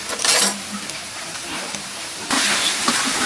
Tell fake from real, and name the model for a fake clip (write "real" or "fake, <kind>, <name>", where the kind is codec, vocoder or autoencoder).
fake, vocoder, BigVGAN v2